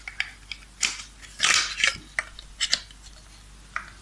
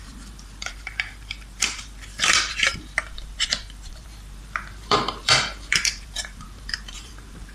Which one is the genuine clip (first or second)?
first